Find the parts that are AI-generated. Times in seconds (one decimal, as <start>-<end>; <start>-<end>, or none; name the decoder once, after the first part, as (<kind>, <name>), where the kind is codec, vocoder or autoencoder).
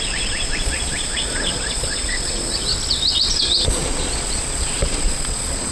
0.0-2.7 (vocoder, Vocos); 3.4-5.7